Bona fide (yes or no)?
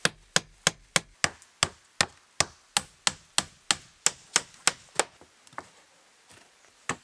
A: yes